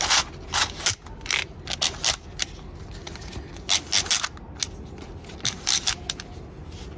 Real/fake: real